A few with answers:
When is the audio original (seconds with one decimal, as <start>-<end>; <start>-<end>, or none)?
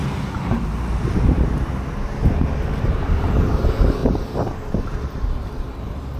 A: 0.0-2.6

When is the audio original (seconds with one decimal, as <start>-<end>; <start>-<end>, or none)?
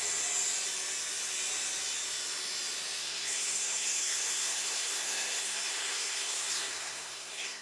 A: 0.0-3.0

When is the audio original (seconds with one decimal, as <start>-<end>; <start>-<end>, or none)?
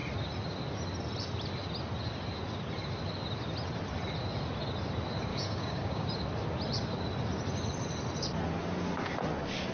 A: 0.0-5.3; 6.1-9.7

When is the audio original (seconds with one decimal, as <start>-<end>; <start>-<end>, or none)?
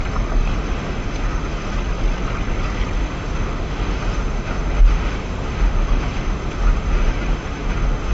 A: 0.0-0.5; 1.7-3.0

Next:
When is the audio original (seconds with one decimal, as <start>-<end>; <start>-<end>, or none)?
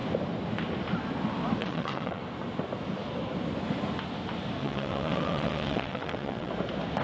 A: 0.0-1.6; 2.2-4.6; 6.5-7.0